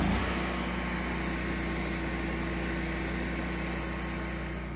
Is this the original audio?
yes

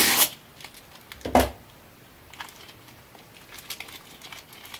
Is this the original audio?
yes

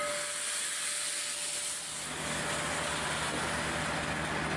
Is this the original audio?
yes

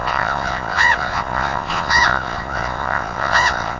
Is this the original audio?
no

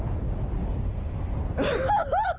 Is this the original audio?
yes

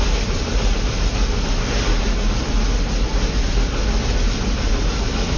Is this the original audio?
yes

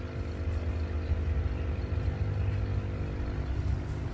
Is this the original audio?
yes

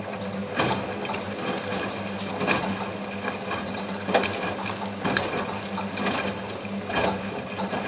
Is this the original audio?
yes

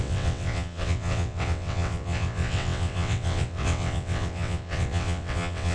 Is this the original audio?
no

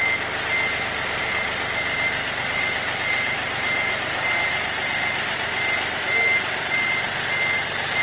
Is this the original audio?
yes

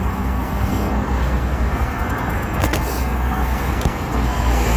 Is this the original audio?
no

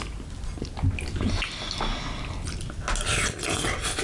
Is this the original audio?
yes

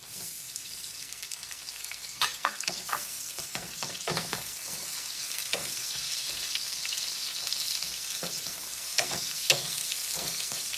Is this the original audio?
no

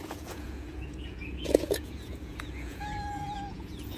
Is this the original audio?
no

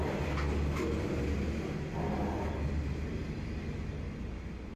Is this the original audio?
yes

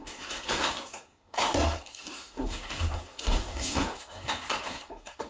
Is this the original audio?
no